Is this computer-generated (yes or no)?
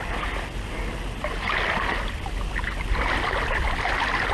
no